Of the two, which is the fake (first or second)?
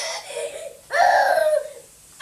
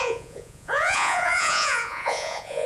second